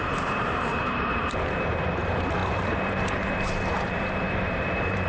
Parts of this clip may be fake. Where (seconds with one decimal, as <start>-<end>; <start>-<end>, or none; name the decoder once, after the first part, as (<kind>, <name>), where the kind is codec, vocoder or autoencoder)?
0.0-5.1 (vocoder, BigVGAN v2)